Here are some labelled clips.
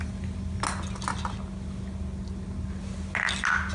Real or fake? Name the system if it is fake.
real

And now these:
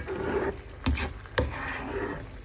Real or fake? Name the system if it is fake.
real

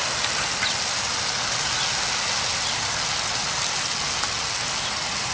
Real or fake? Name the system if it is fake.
real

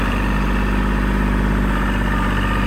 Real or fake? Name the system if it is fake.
real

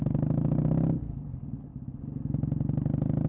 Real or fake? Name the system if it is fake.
real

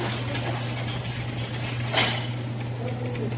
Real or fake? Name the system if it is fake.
real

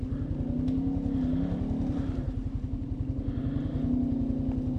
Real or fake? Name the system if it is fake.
real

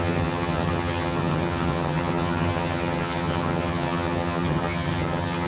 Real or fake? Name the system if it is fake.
fake, vocoder, HiFi-GAN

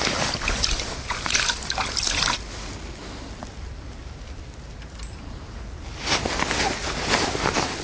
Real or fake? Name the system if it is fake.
real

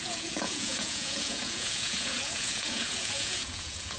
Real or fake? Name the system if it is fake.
fake, vocoder, Vocos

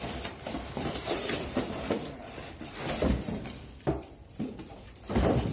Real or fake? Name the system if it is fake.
fake, vocoder, BigVGAN v2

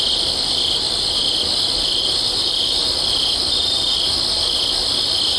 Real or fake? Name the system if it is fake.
real